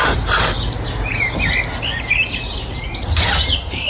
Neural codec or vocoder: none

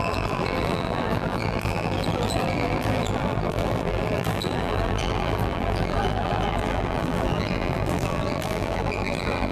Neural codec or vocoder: vocoder, BigVGAN v2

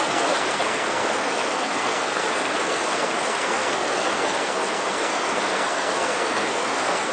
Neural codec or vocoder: codec, SNAC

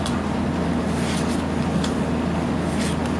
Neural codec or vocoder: none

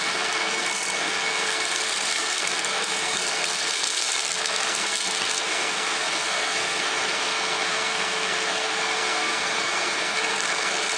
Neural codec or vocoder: codec, SNAC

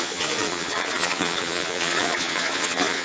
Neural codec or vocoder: vocoder, Vocos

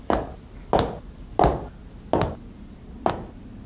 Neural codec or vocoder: none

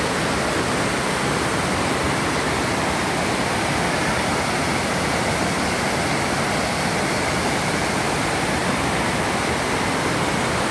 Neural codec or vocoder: none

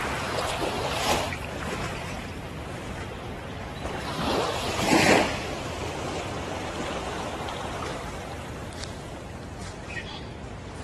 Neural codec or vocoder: vocoder, BigVGAN v2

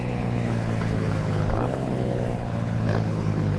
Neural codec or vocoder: codec, HILCodec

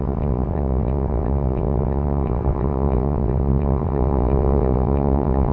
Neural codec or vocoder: vocoder, WaveNeXt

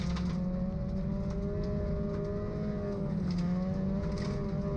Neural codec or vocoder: none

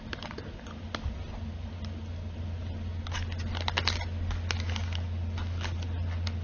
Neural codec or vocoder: none